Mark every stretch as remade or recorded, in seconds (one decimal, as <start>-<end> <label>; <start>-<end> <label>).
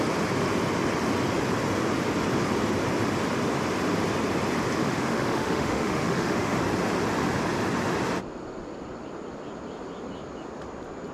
0.0-4.8 recorded; 4.8-6.6 remade; 6.6-11.1 recorded